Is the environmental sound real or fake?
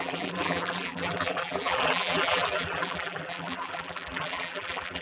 fake